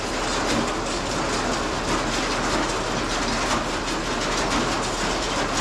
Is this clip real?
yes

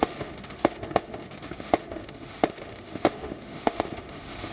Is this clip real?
no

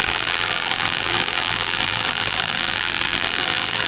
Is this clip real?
no